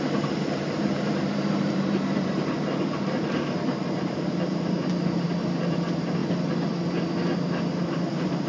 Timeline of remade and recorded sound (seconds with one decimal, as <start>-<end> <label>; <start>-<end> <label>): 0.0-6.2 remade; 6.2-7.9 recorded; 7.9-8.5 remade